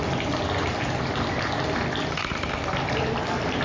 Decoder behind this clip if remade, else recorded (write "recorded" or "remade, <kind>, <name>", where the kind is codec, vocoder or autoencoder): recorded